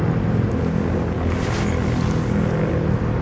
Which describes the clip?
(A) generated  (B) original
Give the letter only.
B